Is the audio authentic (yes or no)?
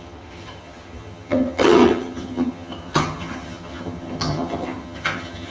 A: no